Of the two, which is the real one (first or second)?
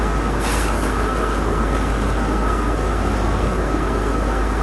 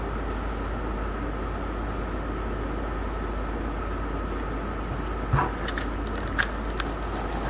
second